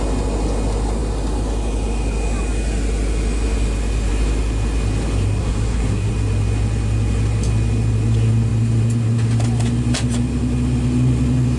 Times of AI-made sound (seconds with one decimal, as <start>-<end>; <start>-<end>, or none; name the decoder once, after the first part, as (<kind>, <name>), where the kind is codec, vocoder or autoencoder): 5.4-6.1 (codec, SNAC)